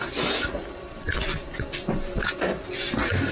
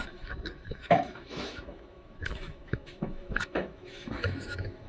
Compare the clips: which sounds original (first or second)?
first